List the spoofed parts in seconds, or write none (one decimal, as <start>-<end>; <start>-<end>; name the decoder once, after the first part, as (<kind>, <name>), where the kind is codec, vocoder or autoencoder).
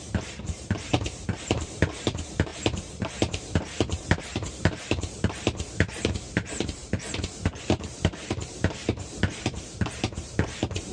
0.0-10.9 (vocoder, BigVGAN v2)